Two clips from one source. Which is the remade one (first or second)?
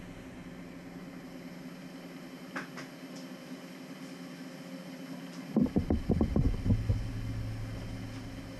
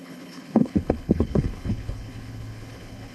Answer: second